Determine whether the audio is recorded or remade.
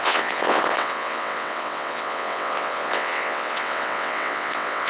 remade